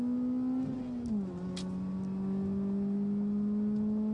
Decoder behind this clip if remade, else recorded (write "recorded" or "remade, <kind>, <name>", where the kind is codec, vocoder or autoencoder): recorded